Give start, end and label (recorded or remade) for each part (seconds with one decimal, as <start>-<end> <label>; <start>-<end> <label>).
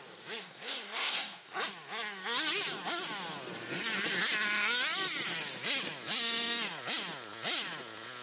0.0-0.4 recorded; 0.4-1.5 remade; 1.5-8.2 recorded